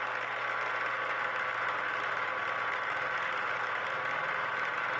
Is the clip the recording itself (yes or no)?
yes